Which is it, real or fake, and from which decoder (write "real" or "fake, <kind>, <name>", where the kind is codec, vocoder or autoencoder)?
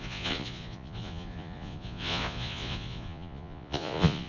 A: fake, vocoder, Vocos